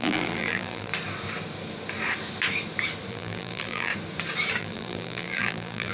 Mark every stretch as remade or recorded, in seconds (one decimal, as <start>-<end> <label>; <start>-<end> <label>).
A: 0.0-0.9 remade; 0.9-3.1 recorded; 3.1-3.9 remade; 3.9-4.6 recorded; 4.6-5.9 remade